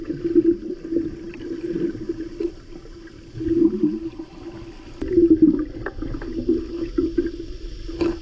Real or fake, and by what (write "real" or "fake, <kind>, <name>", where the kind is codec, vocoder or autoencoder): real